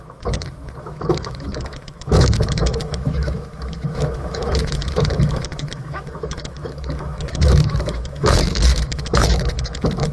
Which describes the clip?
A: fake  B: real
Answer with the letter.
A